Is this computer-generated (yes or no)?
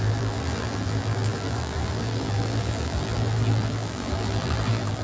yes